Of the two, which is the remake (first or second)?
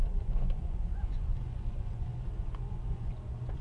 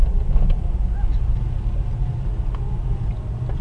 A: first